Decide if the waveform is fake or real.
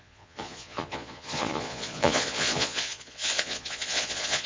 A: fake